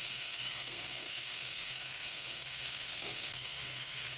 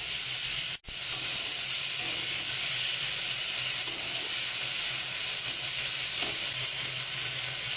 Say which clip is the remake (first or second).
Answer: first